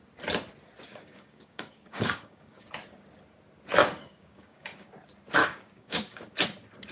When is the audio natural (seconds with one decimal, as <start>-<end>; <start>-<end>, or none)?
0.0-0.9; 2.7-3.8; 4.9-5.4; 6.2-6.9